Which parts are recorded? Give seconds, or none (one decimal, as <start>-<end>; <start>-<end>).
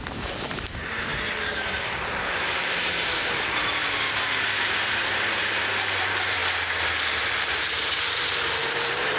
6.4-7.2